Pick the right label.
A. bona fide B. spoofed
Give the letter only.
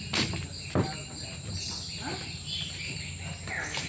A